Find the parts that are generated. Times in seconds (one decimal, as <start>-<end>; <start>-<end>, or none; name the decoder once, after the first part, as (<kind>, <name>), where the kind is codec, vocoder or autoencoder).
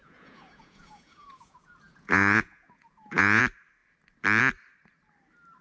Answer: 0.0-3.4 (vocoder, Vocos)